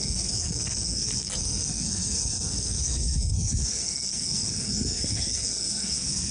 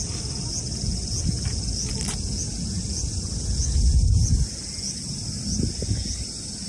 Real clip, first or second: second